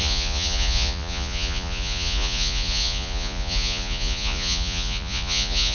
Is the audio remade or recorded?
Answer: remade